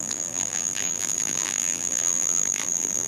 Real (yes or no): no